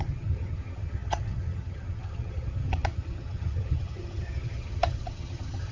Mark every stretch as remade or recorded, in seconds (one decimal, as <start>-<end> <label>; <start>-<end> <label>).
0.0-5.7 remade